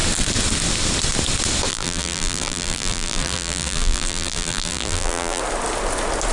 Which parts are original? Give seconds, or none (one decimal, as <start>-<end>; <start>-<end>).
0.0-1.7; 5.4-6.3